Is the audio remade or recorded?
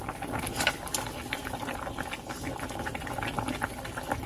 recorded